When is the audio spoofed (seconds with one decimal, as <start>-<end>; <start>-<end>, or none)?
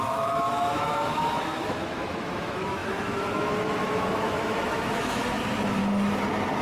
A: 0.0-5.8